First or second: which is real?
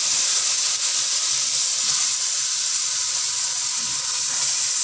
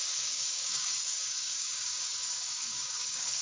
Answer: first